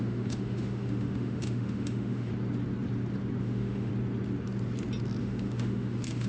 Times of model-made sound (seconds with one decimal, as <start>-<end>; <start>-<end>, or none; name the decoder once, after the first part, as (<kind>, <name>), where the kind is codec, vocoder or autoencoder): 0.0-2.3 (autoencoder, DAC-VAE); 3.4-3.9; 5.2-6.3